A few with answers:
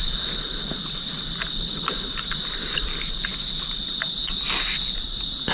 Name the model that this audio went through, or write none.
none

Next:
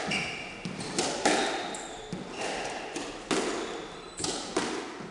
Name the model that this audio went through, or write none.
none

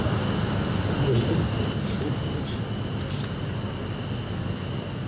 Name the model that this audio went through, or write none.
none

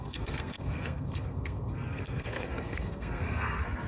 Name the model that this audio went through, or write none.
codec, SNAC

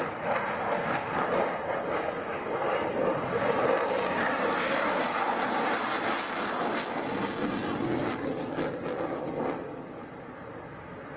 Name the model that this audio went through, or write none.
none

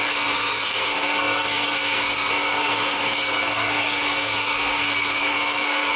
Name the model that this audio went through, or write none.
codec, SNAC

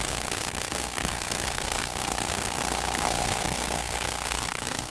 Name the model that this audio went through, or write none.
codec, SNAC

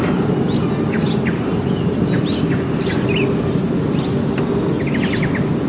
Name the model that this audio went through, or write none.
none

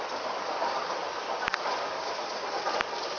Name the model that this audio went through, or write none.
none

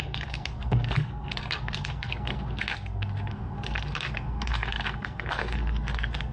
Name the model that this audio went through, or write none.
codec, SNAC